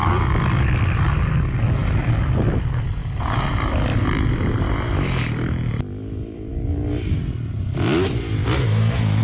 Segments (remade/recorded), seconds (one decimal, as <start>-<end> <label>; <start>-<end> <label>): 0.0-9.2 recorded